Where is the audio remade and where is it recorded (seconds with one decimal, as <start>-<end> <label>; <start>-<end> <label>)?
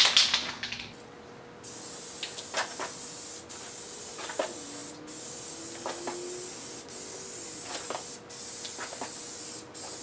0.0-10.0 recorded